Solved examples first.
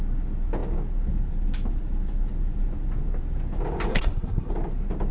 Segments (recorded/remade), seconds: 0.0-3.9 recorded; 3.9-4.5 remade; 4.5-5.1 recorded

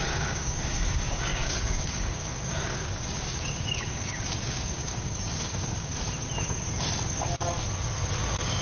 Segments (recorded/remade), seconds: 0.0-5.9 remade; 5.9-8.2 recorded; 8.2-8.6 remade